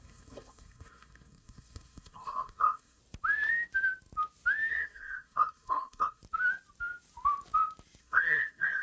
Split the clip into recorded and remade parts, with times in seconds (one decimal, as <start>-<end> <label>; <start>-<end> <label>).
0.0-3.0 remade; 3.0-4.7 recorded; 4.7-6.2 remade; 6.2-8.0 recorded; 8.0-8.8 remade